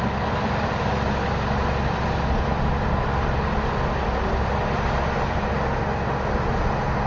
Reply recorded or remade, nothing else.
recorded